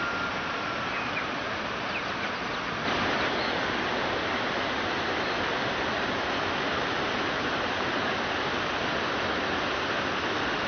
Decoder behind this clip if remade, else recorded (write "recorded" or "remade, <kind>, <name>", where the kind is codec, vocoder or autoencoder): recorded